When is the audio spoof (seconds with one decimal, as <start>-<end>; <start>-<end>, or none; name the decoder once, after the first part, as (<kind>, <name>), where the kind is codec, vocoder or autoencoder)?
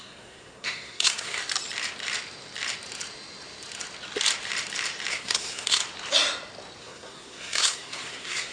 0.0-1.4 (codec, SNAC); 5.1-5.8; 6.8-8.5